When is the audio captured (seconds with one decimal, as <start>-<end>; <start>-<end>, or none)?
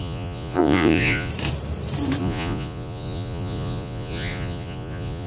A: 1.3-2.2